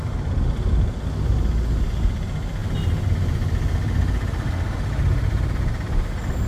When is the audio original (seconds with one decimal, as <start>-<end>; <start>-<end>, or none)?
0.0-2.6; 3.1-6.5